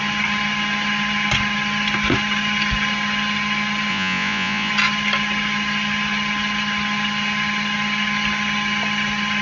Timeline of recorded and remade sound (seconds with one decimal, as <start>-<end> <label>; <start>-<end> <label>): 0.0-3.9 recorded; 3.9-4.7 remade; 4.7-9.4 recorded